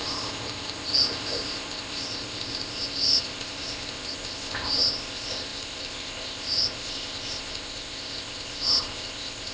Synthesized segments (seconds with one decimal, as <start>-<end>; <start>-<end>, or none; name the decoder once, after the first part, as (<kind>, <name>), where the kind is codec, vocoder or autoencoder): 0.0-9.5 (codec, ZipCodec)